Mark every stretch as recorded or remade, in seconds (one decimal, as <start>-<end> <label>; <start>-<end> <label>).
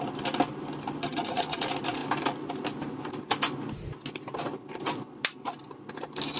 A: 0.0-1.0 recorded; 1.0-1.6 remade; 1.6-6.4 recorded